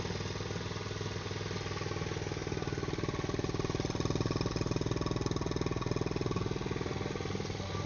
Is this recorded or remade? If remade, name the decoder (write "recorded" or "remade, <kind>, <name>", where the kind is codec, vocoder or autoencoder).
recorded